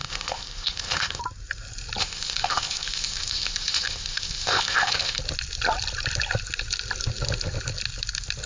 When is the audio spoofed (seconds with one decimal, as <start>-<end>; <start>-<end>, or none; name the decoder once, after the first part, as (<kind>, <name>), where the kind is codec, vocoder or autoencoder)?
0.0-1.2 (codec, ZipCodec); 2.0-5.2